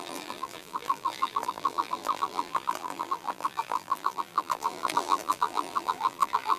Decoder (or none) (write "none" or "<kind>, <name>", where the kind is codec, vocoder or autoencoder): vocoder, BigVGAN v2